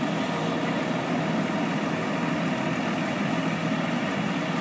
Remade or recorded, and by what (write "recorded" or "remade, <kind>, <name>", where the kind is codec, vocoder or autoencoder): recorded